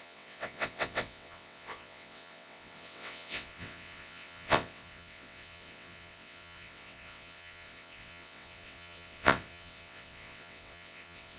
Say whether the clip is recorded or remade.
remade